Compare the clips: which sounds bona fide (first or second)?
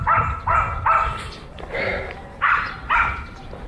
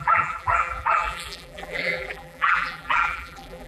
first